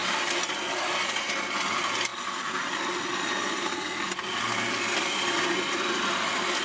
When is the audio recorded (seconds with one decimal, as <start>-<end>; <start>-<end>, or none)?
0.0-6.6